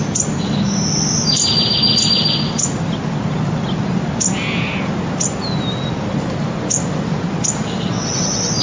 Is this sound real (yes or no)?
yes